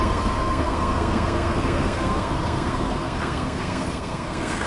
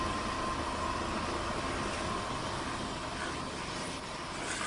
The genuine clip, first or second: second